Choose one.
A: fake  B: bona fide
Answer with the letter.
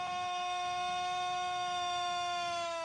A